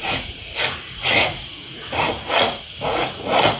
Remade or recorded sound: remade